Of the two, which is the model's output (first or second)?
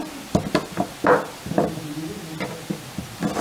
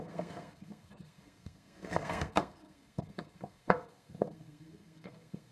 second